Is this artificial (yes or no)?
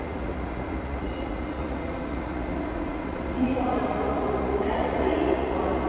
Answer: yes